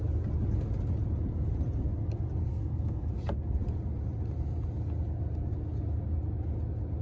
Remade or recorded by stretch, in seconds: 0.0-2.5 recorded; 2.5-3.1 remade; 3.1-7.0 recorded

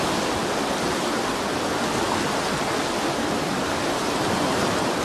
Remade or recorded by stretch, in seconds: 0.0-0.4 remade; 0.4-3.4 recorded; 3.4-5.0 remade

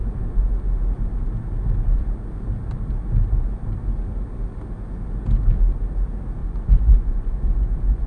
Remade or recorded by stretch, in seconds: 0.0-6.4 recorded; 6.4-8.1 remade

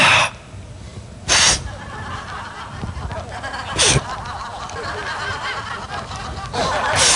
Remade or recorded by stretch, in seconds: 0.0-4.5 recorded; 4.5-6.5 remade; 6.5-7.2 recorded

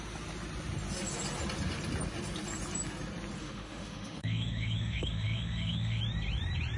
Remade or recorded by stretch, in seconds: 0.0-3.4 recorded; 3.4-6.0 remade; 6.0-6.8 recorded

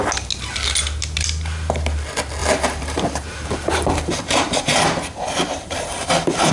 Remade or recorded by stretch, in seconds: 0.0-2.4 recorded; 2.4-6.5 remade

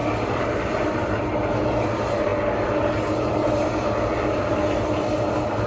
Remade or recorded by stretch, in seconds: 0.0-2.3 remade; 2.3-4.4 recorded; 4.4-5.7 remade

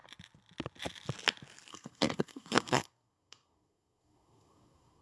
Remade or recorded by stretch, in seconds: 0.0-1.7 recorded; 1.7-5.0 remade